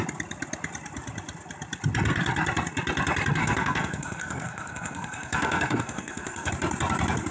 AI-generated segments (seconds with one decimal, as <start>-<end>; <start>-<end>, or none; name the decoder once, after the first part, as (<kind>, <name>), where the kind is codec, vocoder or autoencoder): 3.4-6.5 (codec, SNAC)